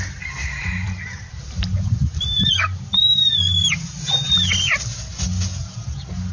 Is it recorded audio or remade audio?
recorded